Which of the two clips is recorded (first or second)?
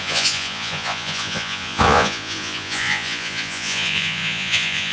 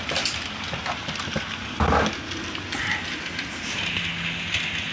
second